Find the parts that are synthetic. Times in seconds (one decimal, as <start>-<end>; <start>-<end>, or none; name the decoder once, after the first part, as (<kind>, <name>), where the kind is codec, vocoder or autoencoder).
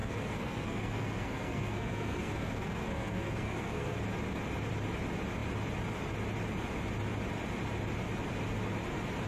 0.0-4.0 (codec, SNAC)